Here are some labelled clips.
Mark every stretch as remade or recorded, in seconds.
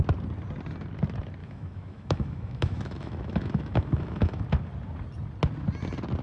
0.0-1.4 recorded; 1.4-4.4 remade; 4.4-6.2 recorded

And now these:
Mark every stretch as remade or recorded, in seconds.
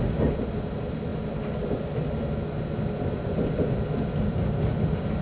0.0-5.2 recorded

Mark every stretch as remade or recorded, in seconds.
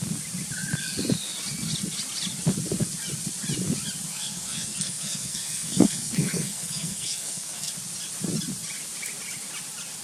0.0-4.1 recorded; 4.1-7.7 remade; 7.7-10.0 recorded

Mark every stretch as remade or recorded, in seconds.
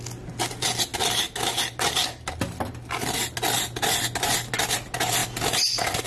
0.0-6.1 recorded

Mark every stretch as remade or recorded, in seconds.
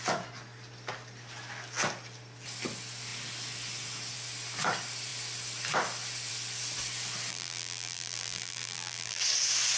0.0-7.3 recorded; 7.3-9.2 remade; 9.2-9.8 recorded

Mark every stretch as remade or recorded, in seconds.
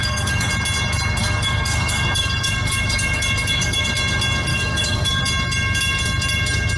0.0-0.5 remade; 0.5-1.2 recorded; 1.2-3.9 remade; 3.9-4.5 recorded; 4.5-5.2 remade; 5.2-6.8 recorded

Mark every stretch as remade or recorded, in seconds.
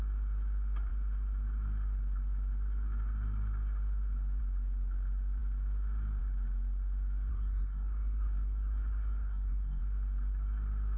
0.0-7.3 recorded; 7.3-9.8 remade; 9.8-11.0 recorded